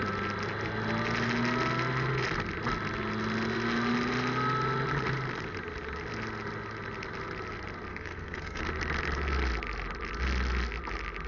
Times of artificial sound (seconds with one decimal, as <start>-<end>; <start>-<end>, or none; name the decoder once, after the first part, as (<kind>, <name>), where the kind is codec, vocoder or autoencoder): 7.9-8.6 (codec, SNAC)